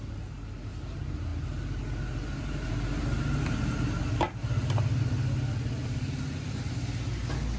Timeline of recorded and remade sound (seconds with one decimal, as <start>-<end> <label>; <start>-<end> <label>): 0.0-7.6 recorded